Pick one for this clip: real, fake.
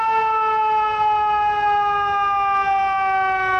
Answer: real